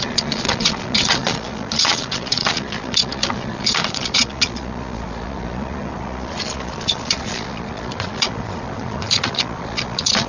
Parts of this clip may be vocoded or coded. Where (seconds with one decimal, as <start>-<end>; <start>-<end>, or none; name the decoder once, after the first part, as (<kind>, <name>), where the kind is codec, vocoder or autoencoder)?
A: 0.0-10.3 (vocoder, Vocos)